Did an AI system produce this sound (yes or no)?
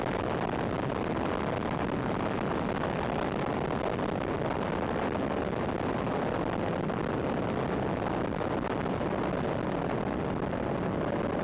no